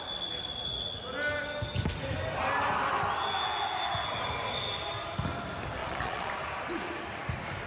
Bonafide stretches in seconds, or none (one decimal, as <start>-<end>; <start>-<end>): 0.0-5.8; 6.3-7.7

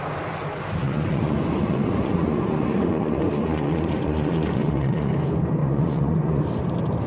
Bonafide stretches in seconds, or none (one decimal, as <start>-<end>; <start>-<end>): 0.0-0.8; 5.1-5.6; 6.4-7.1

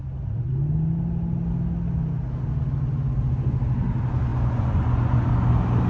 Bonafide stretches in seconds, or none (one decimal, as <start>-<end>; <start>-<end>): 0.0-4.3; 5.3-5.9

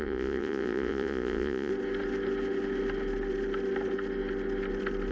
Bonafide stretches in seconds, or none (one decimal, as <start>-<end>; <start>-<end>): 1.7-5.1